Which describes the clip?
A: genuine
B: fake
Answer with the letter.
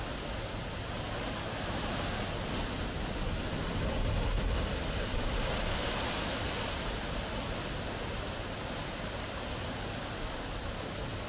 A